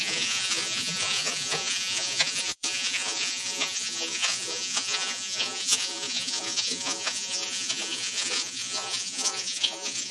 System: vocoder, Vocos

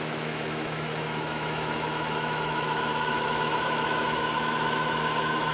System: autoencoder, DAC-VAE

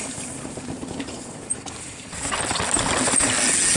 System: none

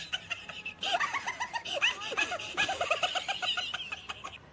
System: none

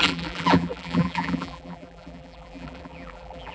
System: vocoder, BigVGAN v2